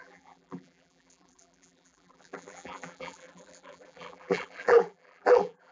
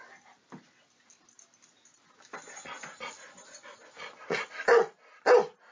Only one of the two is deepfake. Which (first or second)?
first